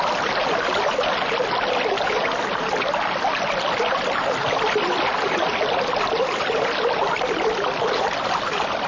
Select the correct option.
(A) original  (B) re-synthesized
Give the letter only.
A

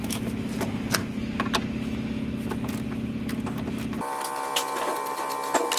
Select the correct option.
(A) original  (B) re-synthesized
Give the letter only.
A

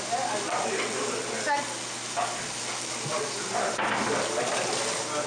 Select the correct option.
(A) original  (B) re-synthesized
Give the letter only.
A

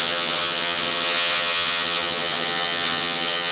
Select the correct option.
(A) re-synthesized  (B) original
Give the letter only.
A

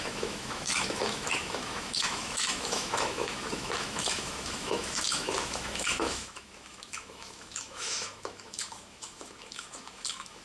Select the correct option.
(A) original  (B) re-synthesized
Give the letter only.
B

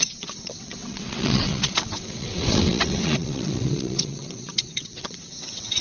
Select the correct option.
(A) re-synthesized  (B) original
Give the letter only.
A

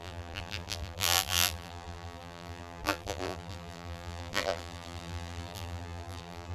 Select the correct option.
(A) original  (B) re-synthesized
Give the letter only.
B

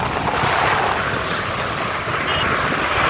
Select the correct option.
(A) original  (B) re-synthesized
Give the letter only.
A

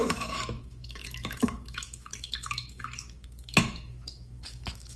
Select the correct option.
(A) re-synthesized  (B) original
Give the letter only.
A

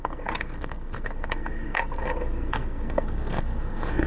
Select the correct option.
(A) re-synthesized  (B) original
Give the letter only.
A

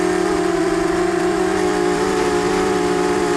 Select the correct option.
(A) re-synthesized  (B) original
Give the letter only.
A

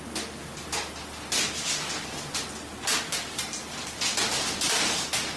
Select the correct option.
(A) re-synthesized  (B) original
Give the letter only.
B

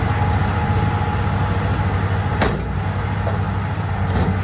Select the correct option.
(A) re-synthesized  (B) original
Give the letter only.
B